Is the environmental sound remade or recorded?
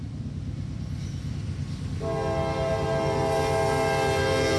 recorded